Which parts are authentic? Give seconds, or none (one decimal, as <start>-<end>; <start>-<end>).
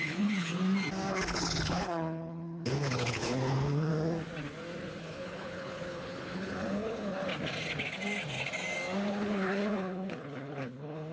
0.6-1.1; 3.9-5.0; 7.3-9.1